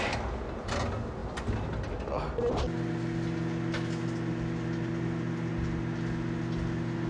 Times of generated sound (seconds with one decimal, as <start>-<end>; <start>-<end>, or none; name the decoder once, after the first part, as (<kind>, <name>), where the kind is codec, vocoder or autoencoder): none